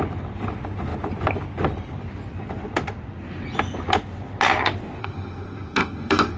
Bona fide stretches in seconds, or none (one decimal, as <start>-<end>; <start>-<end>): 0.0-5.0